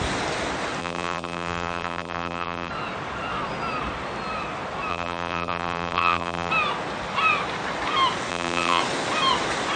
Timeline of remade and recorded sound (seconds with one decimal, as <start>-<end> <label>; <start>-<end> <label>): 0.0-0.8 recorded; 0.8-2.7 remade; 2.7-4.9 recorded; 4.9-6.5 remade; 6.5-8.3 recorded; 8.3-8.8 remade; 8.8-9.8 recorded